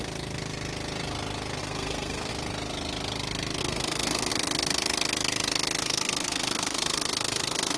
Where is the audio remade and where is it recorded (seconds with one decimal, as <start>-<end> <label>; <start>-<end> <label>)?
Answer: 0.0-1.6 recorded; 1.6-2.3 remade; 2.3-3.6 recorded; 3.6-4.3 remade; 4.3-5.8 recorded; 5.8-7.8 remade